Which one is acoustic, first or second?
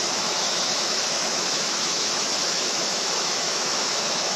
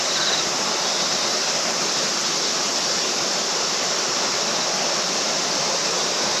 second